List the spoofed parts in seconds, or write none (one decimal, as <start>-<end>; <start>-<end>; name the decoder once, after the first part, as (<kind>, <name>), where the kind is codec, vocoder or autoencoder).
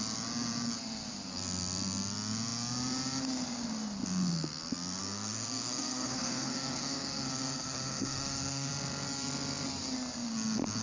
5.0-8.7 (codec, SNAC)